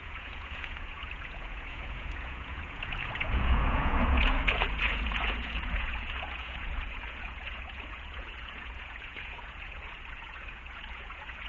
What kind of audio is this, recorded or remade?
remade